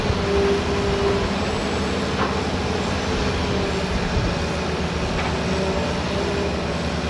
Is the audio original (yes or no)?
yes